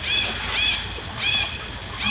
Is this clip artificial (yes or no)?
no